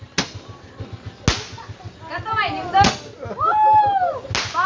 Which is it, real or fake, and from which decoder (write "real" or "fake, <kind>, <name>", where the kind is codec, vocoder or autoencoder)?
real